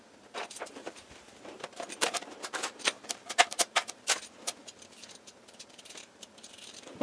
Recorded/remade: remade